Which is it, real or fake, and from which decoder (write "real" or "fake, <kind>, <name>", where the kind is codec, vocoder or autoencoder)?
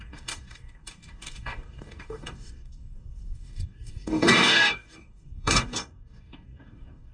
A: fake, codec, DAC